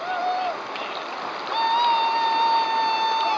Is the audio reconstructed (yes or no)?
no